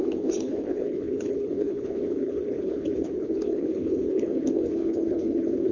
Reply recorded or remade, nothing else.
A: remade